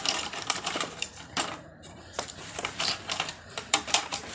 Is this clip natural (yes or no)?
no